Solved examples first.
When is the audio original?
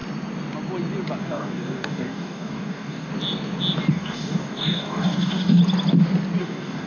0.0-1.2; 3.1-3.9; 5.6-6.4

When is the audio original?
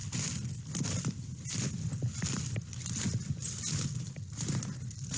0.0-5.2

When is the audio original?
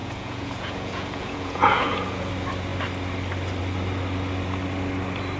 2.3-5.4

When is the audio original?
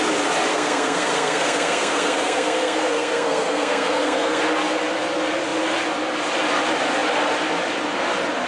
0.0-0.5; 4.4-8.5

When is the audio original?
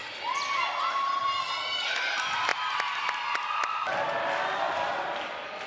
0.0-5.7